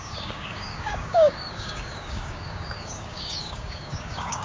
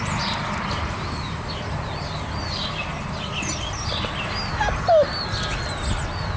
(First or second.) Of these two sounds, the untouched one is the second